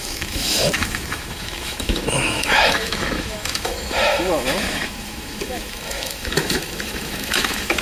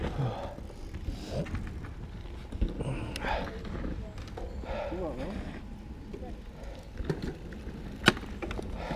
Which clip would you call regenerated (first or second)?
first